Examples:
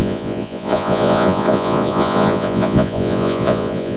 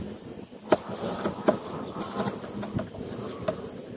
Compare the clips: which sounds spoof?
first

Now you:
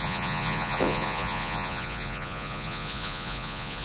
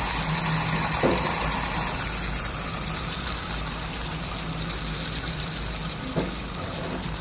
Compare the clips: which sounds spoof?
first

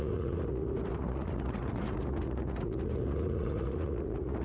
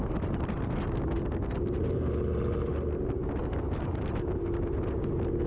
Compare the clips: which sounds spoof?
first